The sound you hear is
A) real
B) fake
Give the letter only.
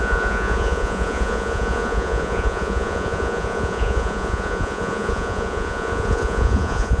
B